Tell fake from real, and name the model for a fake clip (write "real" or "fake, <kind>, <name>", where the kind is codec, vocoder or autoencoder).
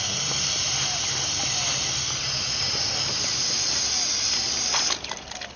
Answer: real